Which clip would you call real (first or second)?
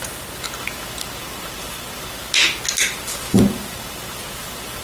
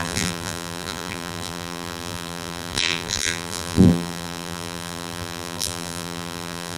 first